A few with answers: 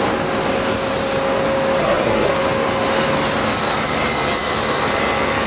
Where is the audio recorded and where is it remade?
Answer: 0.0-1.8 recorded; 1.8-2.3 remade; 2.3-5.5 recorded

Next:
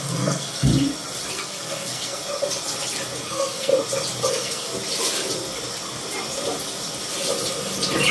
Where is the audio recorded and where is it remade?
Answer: 0.0-0.7 remade; 0.7-1.3 recorded; 1.3-2.2 remade; 2.2-3.2 recorded; 3.2-3.7 remade; 3.7-4.3 recorded; 4.3-4.7 remade; 4.7-8.1 recorded

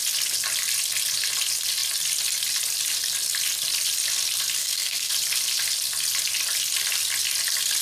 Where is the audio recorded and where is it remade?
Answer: 0.0-4.6 recorded; 4.6-5.1 remade; 5.1-7.8 recorded

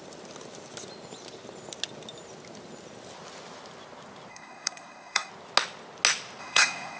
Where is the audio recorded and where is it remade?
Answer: 0.0-4.3 recorded; 4.3-5.3 remade; 5.3-6.4 recorded; 6.4-7.0 remade

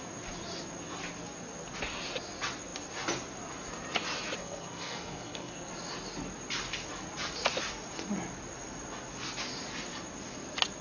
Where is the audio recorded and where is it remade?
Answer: 0.0-4.4 recorded; 4.4-5.7 remade; 5.7-10.8 recorded

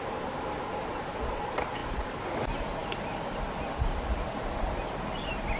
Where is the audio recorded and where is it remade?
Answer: 0.0-5.6 recorded

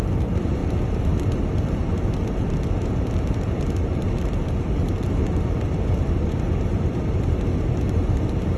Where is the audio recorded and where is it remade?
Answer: 0.0-8.6 recorded